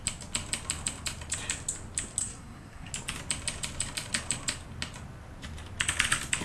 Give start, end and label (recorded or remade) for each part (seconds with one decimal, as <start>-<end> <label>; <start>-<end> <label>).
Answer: 0.0-2.2 recorded; 2.2-2.9 remade; 2.9-6.4 recorded